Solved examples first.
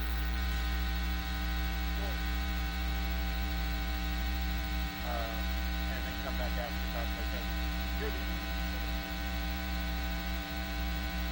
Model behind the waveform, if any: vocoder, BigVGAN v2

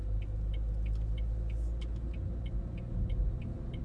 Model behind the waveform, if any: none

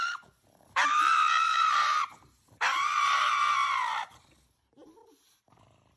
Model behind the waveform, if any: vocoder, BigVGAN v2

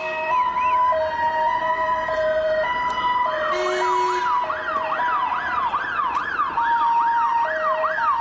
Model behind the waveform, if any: vocoder, BigVGAN v2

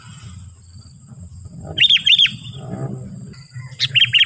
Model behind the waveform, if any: none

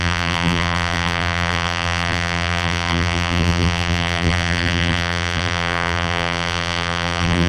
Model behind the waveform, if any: vocoder, BigVGAN v2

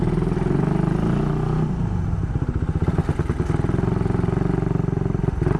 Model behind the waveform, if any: none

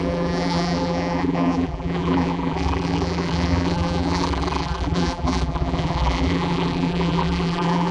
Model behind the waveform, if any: vocoder, BigVGAN v2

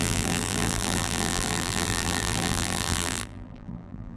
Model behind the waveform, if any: vocoder, BigVGAN v2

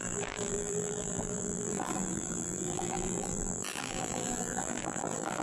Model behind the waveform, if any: vocoder, BigVGAN v2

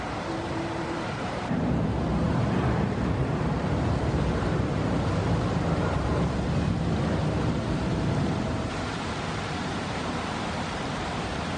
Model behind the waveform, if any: vocoder, BigVGAN v2